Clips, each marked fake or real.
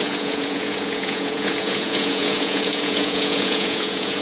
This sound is fake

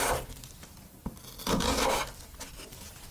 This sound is real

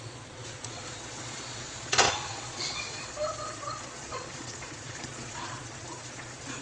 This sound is fake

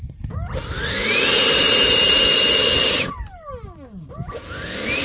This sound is real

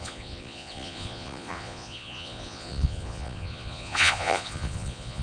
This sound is fake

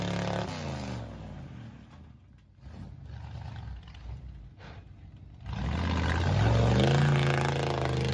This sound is real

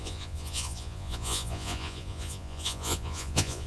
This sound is fake